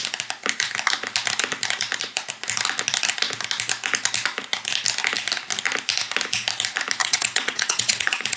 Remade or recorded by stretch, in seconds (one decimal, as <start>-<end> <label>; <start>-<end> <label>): 0.0-7.0 recorded; 7.0-8.4 remade